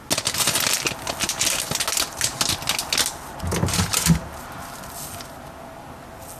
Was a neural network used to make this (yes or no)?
no